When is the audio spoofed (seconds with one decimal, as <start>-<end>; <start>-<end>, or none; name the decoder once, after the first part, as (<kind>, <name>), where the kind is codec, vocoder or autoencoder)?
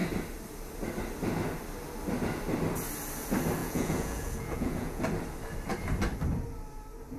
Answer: 3.6-5.0 (vocoder, Vocos)